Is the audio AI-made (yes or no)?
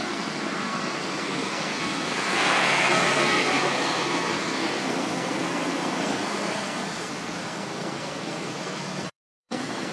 yes